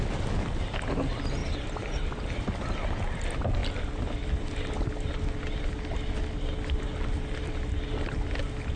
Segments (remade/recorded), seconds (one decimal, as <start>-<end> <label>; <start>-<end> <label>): 0.0-8.8 recorded